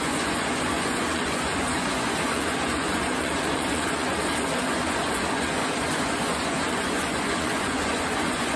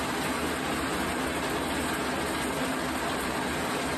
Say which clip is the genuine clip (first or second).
second